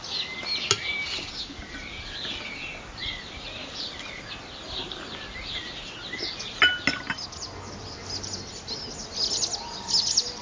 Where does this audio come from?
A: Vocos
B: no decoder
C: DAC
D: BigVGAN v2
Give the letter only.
B